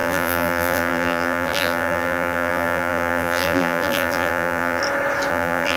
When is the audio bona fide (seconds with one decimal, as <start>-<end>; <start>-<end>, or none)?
4.8-5.3